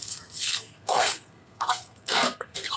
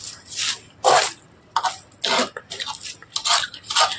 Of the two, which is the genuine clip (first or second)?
second